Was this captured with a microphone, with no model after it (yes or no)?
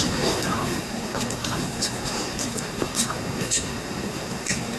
no